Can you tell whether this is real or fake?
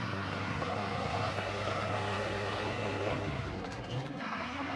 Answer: fake